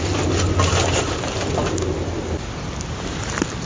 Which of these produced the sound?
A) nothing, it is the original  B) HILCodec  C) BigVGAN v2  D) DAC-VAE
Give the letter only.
A